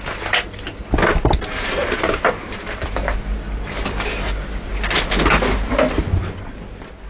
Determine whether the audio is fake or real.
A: real